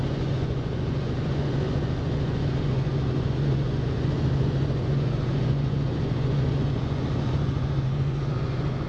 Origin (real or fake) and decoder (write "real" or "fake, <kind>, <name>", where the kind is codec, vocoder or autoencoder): fake, vocoder, Vocos